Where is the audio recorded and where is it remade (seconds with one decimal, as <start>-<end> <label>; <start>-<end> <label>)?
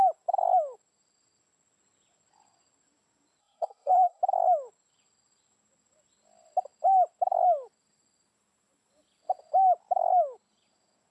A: 0.0-3.4 recorded; 3.4-4.2 remade; 4.2-11.1 recorded